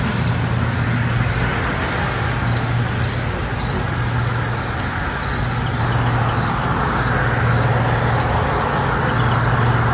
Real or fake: real